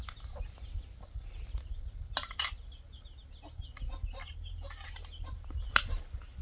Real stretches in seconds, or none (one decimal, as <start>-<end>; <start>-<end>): 0.0-6.4